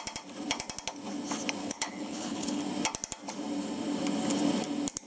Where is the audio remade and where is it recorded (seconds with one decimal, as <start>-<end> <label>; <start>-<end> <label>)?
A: 0.0-1.6 recorded; 1.6-2.6 remade; 2.6-5.1 recorded